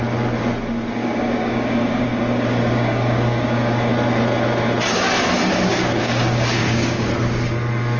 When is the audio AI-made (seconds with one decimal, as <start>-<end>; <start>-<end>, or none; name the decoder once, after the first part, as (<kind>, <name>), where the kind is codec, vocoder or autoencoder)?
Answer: 1.0-3.9 (codec, DAC); 5.7-7.1